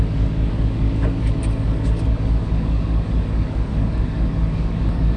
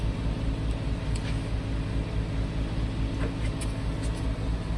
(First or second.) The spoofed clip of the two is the first